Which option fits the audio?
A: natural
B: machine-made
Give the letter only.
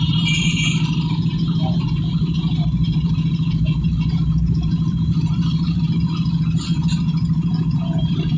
B